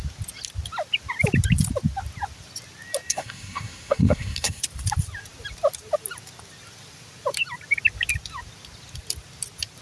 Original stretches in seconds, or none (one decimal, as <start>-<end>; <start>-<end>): 0.0-3.1; 4.6-9.8

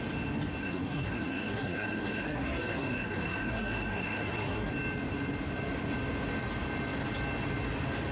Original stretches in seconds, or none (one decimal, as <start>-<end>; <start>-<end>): 0.0-0.6; 4.7-8.1

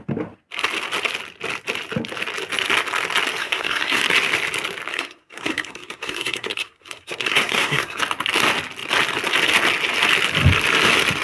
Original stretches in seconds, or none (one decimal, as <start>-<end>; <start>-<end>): 0.0-3.4; 4.0-4.9; 8.0-11.2

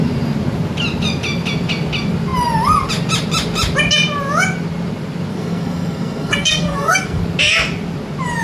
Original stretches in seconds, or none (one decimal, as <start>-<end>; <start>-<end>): 0.0-5.3; 7.2-8.4